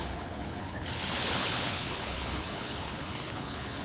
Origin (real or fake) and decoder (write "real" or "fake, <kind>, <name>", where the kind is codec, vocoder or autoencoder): fake, codec, HILCodec